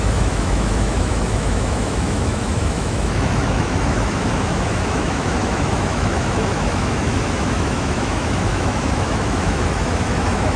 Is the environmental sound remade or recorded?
remade